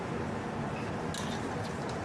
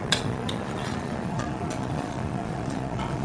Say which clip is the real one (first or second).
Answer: first